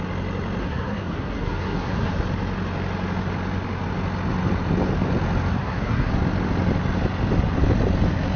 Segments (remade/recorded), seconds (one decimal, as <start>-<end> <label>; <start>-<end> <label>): 0.0-0.6 recorded; 0.6-2.1 remade; 2.1-5.5 recorded; 5.5-6.1 remade; 6.1-8.4 recorded